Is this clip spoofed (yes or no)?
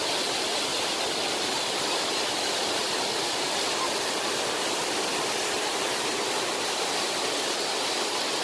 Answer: no